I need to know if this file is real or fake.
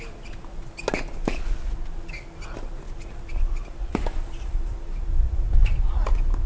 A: real